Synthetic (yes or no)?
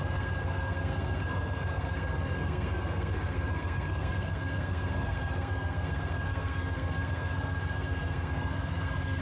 yes